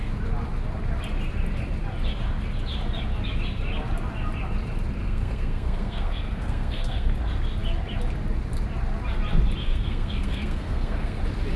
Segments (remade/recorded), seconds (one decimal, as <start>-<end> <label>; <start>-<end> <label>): 0.0-5.0 recorded; 5.0-7.1 remade; 7.1-9.6 recorded; 9.6-11.2 remade; 11.2-11.6 recorded